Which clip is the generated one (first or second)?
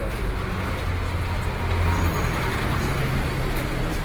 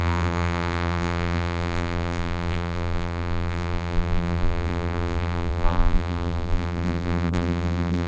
second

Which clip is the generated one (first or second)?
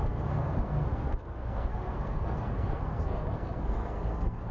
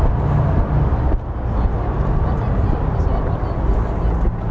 first